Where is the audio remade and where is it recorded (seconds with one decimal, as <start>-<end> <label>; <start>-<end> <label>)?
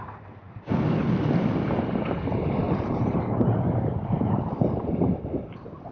0.0-5.9 recorded